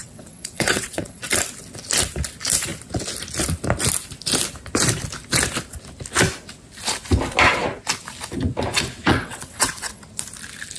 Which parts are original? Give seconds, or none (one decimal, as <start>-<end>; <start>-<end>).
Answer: 1.2-9.1; 10.0-10.8